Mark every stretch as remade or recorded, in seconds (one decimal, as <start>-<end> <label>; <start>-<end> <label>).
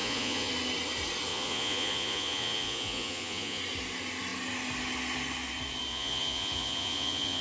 0.0-0.5 remade; 0.5-1.3 recorded; 1.3-3.6 remade; 3.6-5.9 recorded; 5.9-7.4 remade